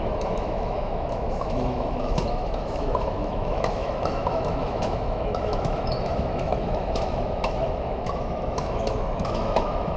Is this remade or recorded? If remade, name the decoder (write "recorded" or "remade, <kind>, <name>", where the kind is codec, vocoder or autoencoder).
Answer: remade, autoencoder, DAC-VAE